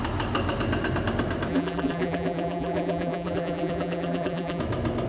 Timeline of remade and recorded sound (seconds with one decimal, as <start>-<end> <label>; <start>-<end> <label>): 0.0-1.5 recorded; 1.5-4.6 remade; 4.6-5.1 recorded